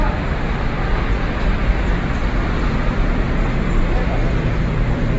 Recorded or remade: recorded